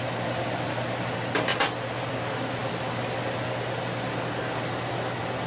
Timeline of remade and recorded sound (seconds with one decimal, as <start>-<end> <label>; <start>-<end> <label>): 0.0-5.5 recorded